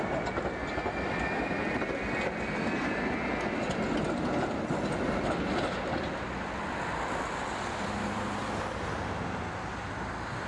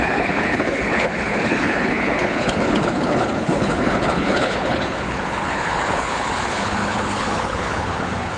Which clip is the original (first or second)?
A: first